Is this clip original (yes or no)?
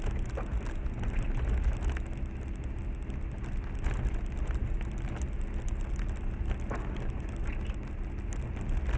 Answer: yes